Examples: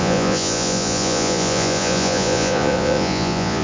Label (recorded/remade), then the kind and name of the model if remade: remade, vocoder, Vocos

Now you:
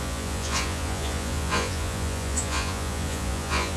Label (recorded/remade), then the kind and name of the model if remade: remade, vocoder, Vocos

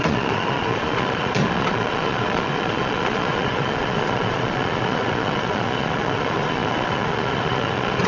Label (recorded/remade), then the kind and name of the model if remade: remade, vocoder, Vocos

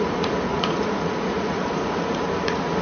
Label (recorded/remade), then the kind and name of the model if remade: remade, vocoder, Vocos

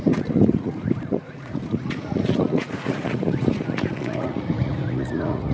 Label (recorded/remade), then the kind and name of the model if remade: remade, vocoder, Vocos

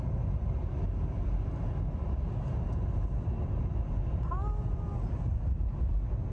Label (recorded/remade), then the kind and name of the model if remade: recorded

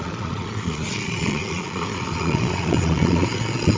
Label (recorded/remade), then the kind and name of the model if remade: remade, vocoder, Vocos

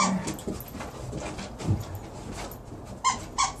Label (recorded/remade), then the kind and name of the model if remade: recorded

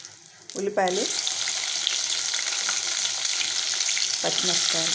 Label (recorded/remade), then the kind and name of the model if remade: recorded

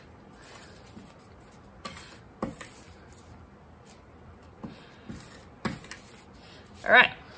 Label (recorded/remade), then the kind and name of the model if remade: recorded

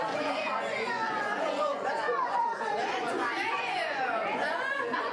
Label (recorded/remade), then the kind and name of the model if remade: remade, vocoder, Vocos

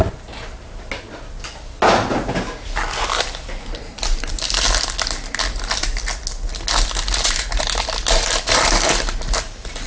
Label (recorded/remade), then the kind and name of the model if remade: recorded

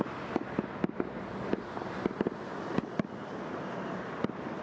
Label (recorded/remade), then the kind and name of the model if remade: recorded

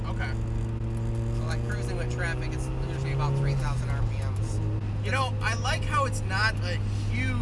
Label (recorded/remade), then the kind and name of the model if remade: recorded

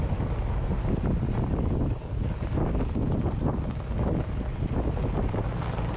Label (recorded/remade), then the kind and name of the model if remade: recorded